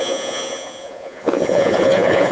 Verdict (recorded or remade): remade